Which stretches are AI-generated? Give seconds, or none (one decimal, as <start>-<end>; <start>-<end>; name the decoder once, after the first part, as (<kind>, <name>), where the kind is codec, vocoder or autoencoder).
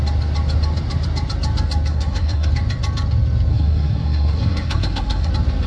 1.9-2.5 (codec, SNAC); 3.5-5.3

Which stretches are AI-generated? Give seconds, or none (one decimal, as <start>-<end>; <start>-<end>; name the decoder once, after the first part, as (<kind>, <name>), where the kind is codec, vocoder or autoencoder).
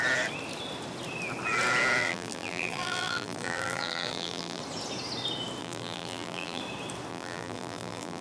2.0-4.6 (vocoder, BigVGAN v2); 5.6-6.6; 7.1-8.2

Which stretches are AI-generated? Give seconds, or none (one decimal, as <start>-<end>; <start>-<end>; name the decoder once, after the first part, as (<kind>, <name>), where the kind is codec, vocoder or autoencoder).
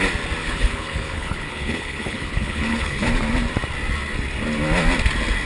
0.4-3.1 (codec, HILCodec)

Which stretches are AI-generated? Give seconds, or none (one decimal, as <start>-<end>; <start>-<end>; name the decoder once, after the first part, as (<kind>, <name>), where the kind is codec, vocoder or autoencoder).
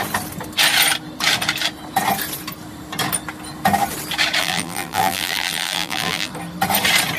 4.4-6.3 (vocoder, BigVGAN v2)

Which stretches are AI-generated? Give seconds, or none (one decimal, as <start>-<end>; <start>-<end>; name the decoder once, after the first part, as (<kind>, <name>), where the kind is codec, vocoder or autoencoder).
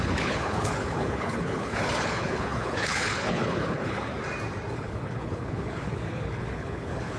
0.0-4.1 (codec, HILCodec); 4.7-7.2